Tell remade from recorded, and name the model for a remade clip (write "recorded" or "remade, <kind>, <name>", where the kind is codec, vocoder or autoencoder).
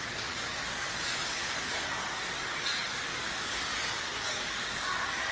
remade, codec, DAC